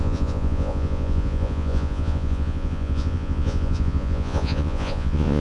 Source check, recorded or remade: remade